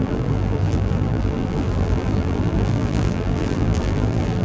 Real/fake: fake